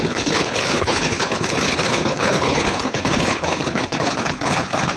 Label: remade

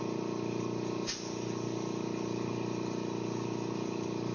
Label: recorded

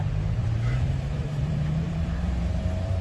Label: remade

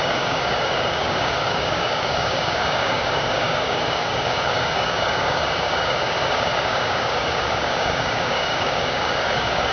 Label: remade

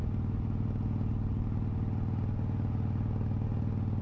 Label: recorded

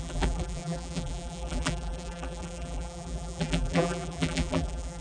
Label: remade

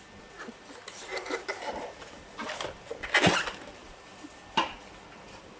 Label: recorded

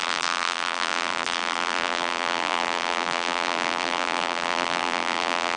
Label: remade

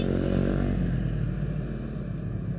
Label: recorded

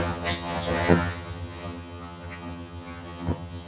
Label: remade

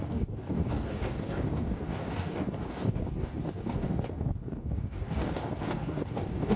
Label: remade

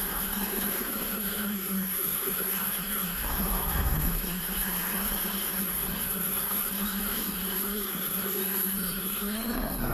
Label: remade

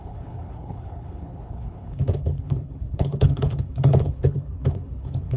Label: remade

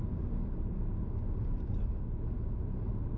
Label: recorded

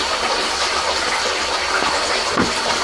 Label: recorded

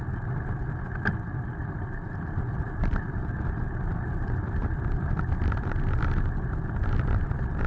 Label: recorded